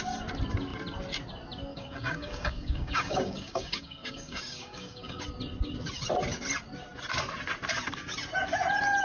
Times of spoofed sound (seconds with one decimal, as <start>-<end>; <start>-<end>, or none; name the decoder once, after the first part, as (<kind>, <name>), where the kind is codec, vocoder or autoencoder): 1.7-5.2 (codec, DAC)